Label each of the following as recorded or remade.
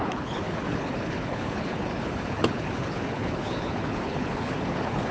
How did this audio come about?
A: remade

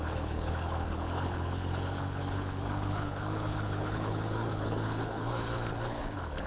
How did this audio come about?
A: remade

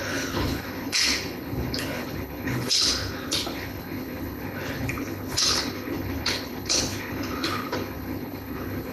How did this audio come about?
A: remade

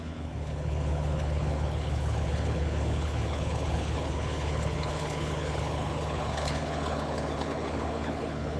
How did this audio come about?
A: remade